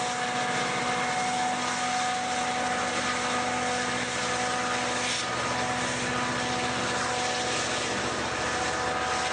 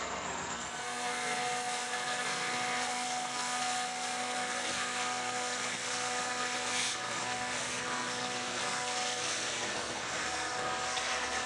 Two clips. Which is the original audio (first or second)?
first